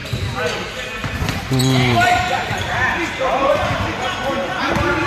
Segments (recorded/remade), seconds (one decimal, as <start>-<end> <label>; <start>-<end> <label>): 0.0-1.0 recorded; 1.0-4.1 remade; 4.1-5.1 recorded